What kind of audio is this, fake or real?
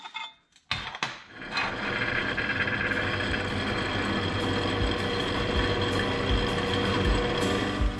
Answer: real